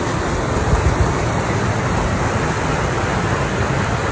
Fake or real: real